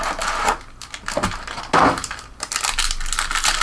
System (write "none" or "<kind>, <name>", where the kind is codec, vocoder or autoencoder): none